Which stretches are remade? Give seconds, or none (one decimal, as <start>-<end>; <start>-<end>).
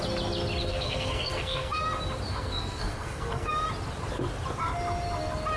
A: 0.6-1.8; 2.3-3.5